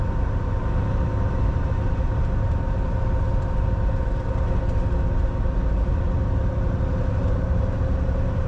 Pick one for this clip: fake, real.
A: real